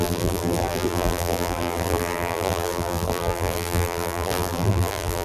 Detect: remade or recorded remade